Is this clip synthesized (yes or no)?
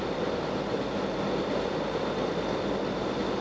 no